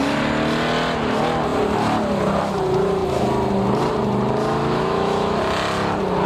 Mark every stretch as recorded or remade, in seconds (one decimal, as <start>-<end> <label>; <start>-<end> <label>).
0.0-4.6 recorded; 4.6-5.4 remade; 5.4-6.3 recorded